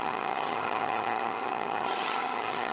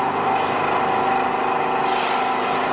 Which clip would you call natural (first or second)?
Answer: second